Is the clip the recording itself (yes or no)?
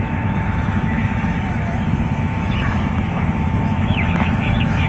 no